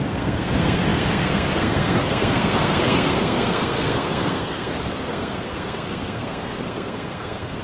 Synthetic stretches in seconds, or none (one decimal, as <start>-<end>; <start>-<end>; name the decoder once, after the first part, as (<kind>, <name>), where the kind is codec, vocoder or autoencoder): 0.0-7.6 (codec, SNAC)